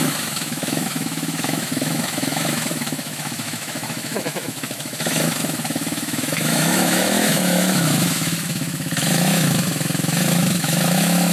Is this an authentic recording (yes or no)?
no